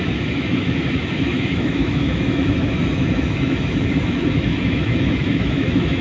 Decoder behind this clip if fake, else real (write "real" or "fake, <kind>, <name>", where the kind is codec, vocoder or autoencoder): fake, autoencoder, DAC-VAE